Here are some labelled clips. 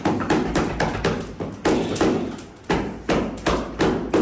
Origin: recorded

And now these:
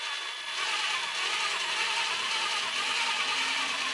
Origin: recorded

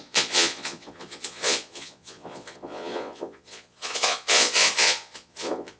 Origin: remade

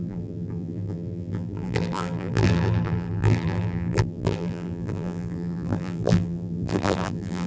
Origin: remade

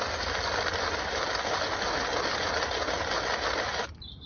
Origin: recorded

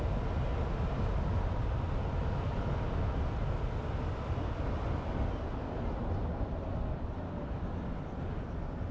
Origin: recorded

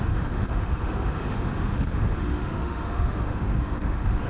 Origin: remade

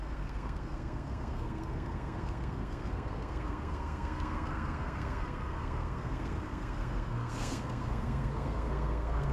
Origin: remade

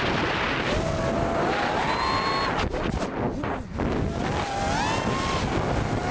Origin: recorded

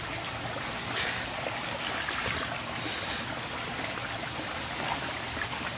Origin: recorded